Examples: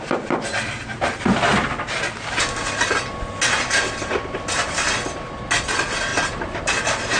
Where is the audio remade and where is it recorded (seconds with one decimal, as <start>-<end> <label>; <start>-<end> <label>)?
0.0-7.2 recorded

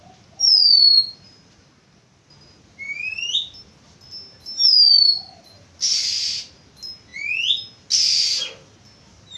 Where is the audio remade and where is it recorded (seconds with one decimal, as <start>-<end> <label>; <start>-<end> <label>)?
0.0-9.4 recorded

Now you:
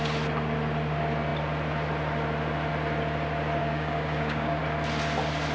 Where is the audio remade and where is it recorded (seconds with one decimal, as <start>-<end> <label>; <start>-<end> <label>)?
0.0-3.6 recorded; 3.6-4.6 remade; 4.6-5.5 recorded

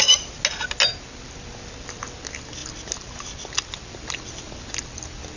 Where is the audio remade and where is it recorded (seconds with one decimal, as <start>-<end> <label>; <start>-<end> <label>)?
0.0-5.4 recorded

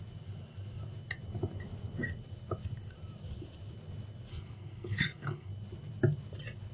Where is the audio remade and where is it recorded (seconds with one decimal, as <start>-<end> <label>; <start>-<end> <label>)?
0.0-4.3 recorded; 4.3-5.5 remade; 5.5-6.7 recorded

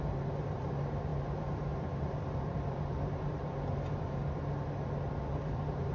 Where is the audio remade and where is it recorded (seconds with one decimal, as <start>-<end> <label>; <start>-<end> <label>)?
0.0-4.2 remade; 4.2-5.3 recorded; 5.3-5.9 remade

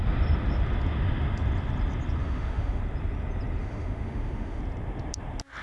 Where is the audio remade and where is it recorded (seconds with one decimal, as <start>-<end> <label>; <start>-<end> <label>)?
0.0-2.2 recorded; 2.2-2.8 remade; 2.8-3.6 recorded; 3.6-4.6 remade; 4.6-5.6 recorded